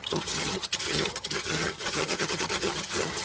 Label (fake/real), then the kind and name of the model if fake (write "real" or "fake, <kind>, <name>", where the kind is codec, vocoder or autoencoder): fake, vocoder, HiFi-GAN